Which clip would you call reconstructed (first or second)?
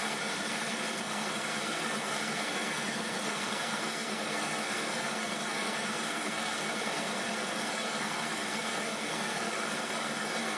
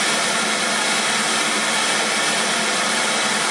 first